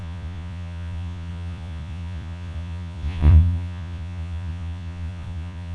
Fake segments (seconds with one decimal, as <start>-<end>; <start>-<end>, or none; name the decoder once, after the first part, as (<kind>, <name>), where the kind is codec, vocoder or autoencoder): 0.0-5.7 (vocoder, Vocos)